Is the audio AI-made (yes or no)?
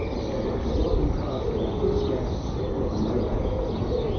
no